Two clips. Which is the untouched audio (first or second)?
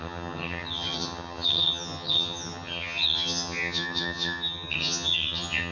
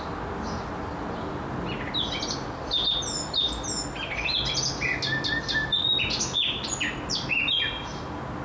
second